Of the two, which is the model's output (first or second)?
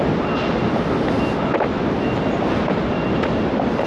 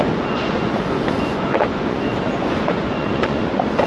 second